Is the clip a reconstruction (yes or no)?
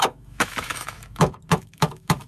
yes